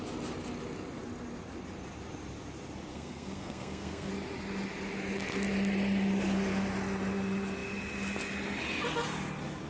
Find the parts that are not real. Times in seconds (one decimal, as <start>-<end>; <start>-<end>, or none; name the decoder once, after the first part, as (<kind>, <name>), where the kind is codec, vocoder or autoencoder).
2.9-4.1 (codec, SNAC)